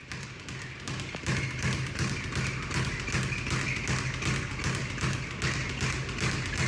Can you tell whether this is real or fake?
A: real